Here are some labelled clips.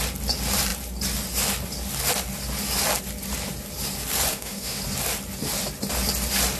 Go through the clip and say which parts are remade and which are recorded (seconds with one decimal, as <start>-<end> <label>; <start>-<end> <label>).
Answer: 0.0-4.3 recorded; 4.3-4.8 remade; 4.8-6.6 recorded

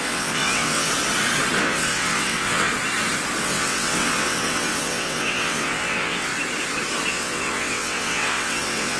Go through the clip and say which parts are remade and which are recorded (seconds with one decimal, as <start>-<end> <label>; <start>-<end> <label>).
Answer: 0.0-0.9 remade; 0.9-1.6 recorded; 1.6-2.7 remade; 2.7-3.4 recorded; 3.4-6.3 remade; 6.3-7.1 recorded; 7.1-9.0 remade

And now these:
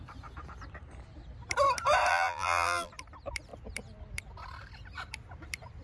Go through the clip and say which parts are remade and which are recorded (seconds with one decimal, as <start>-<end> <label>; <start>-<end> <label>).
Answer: 0.0-2.1 recorded; 2.1-2.9 remade; 2.9-5.8 recorded